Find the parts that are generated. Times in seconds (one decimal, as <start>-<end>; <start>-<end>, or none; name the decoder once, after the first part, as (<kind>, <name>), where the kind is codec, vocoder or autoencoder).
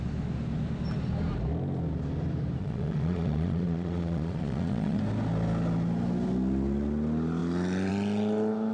2.6-5.0 (vocoder, Vocos)